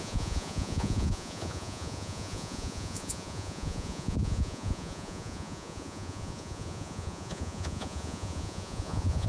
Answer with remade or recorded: remade